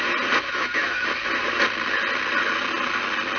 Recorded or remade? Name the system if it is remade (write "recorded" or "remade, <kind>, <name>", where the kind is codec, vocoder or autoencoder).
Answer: recorded